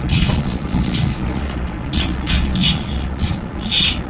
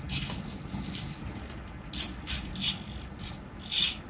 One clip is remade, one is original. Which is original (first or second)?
second